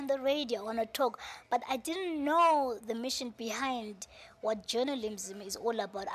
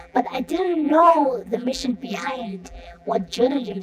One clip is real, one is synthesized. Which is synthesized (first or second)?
second